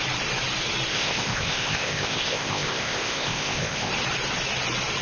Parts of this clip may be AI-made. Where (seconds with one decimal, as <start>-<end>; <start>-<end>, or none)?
0.9-3.9